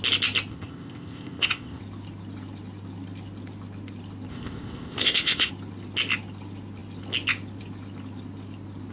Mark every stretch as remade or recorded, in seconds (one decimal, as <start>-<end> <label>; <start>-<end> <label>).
0.0-0.5 recorded; 0.5-1.8 remade; 1.8-4.3 recorded; 4.3-5.5 remade; 5.5-8.9 recorded